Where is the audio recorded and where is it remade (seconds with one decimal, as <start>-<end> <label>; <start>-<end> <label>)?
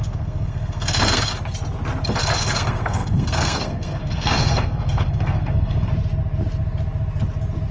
0.0-1.3 remade; 1.3-2.4 recorded; 2.4-5.9 remade; 5.9-7.7 recorded